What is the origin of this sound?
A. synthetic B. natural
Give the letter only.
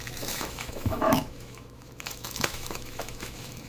A